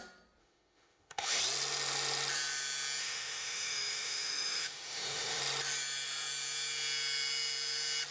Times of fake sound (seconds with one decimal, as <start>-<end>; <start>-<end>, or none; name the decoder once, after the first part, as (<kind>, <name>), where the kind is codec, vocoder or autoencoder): 0.4-1.4 (autoencoder, DAC-VAE); 3.0-5.4